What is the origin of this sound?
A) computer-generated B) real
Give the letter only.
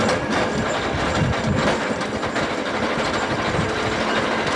B